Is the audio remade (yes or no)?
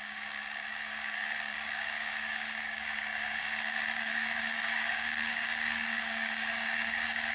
yes